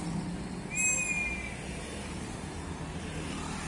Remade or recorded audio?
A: recorded